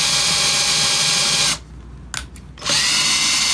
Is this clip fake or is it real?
real